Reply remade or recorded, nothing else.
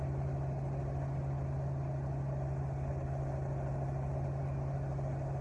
recorded